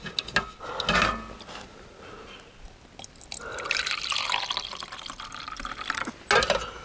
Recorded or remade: recorded